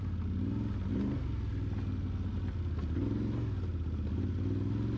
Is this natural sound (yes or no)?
yes